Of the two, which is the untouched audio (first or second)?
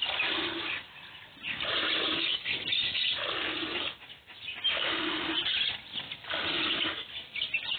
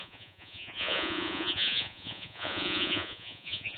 first